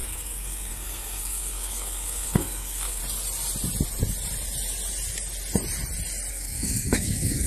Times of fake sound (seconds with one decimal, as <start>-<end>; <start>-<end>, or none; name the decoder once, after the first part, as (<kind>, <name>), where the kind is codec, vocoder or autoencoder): 0.0-3.0 (codec, SNAC); 6.3-7.5